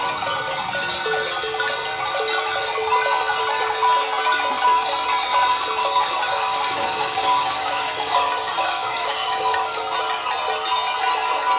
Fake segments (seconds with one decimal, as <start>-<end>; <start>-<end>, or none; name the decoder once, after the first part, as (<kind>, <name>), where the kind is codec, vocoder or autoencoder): 5.8-9.8 (codec, DAC)